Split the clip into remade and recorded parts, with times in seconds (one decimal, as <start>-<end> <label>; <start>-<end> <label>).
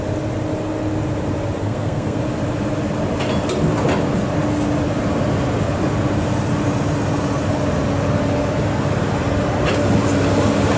0.0-1.6 recorded; 1.6-2.2 remade; 2.2-10.8 recorded